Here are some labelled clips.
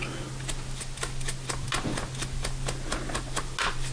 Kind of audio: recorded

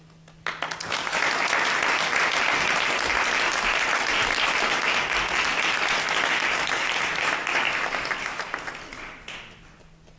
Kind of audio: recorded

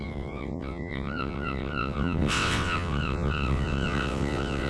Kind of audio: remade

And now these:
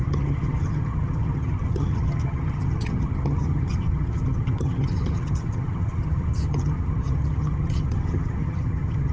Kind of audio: remade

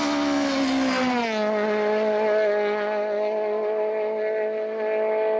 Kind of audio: recorded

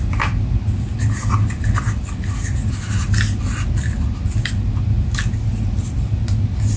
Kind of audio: recorded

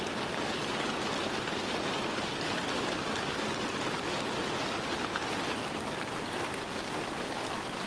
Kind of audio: recorded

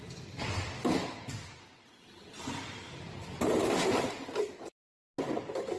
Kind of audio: recorded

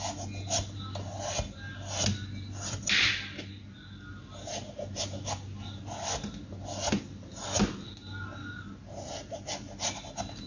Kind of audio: recorded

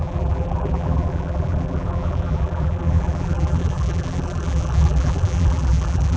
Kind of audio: remade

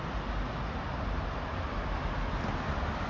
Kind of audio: recorded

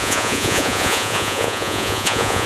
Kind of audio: remade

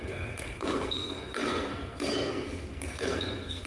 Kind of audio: remade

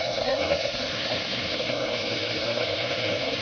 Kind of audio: remade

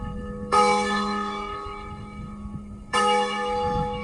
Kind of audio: remade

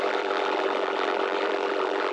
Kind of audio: remade